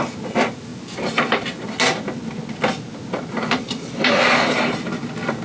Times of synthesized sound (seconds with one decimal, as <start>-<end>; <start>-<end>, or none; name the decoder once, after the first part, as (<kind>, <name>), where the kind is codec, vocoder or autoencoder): none